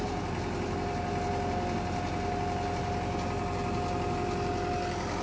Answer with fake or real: real